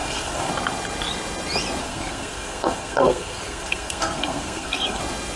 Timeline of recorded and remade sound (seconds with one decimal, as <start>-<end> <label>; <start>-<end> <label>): 0.0-0.5 remade; 0.5-1.8 recorded; 1.8-5.0 remade; 5.0-5.4 recorded